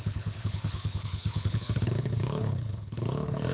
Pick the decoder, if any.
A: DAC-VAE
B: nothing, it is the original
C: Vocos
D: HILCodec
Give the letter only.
D